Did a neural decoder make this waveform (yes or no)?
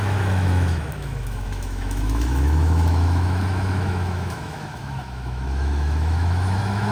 yes